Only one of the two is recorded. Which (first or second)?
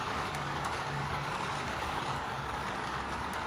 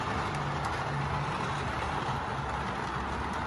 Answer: second